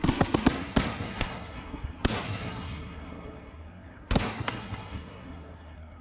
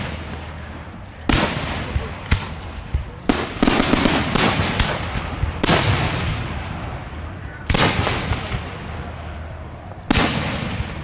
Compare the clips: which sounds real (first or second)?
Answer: second